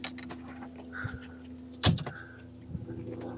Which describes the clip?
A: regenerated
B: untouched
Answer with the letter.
B